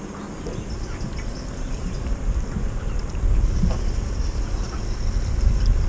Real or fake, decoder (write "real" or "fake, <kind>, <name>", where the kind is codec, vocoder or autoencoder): real